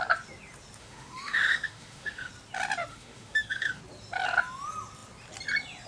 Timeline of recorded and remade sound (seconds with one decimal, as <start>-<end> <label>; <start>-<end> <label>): 0.0-0.8 recorded; 0.8-2.3 remade; 2.3-2.9 recorded; 2.9-3.8 remade; 3.8-5.9 recorded